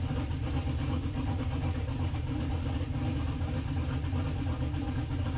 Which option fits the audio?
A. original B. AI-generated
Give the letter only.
A